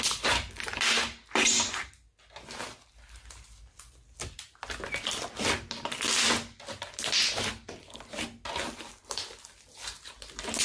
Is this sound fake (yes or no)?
no